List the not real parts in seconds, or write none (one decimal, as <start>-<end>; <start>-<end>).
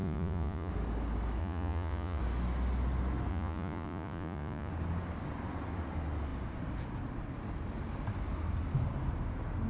0.0-0.7; 1.4-2.2; 3.3-4.7